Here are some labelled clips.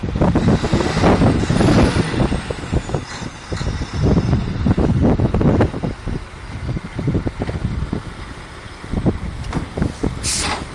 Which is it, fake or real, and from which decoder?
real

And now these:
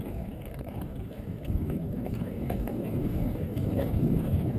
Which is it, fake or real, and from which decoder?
fake, codec, DAC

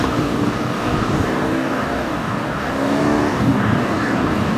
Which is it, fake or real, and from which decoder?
fake, codec, DAC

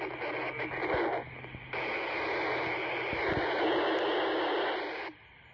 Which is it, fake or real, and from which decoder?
real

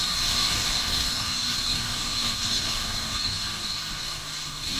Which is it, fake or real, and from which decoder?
fake, codec, DAC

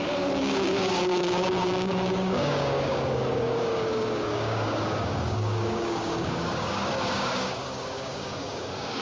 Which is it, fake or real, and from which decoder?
fake, codec, DAC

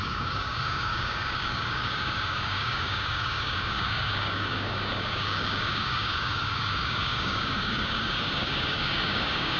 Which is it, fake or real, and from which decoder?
fake, codec, DAC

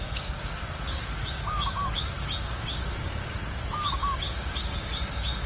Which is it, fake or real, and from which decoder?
fake, codec, DAC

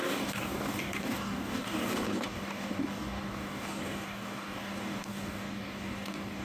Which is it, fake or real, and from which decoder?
fake, codec, DAC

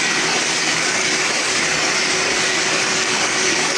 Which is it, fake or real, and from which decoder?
fake, codec, DAC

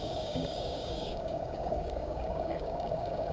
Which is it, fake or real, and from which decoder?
fake, codec, DAC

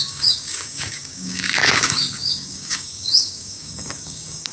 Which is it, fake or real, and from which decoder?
fake, codec, DAC